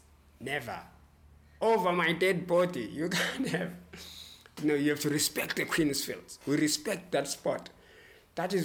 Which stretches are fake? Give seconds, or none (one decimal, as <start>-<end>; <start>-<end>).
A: none